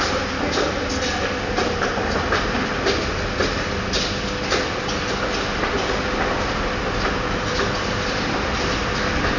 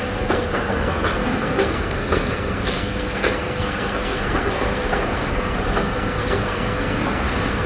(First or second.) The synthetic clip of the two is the second